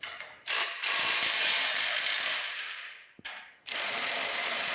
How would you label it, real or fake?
fake